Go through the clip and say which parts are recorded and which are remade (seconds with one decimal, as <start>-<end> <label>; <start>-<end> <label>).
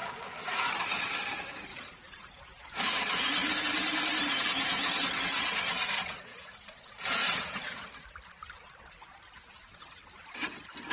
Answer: 0.0-1.7 recorded; 1.7-2.8 remade; 2.8-6.3 recorded; 6.3-7.9 remade; 7.9-10.9 recorded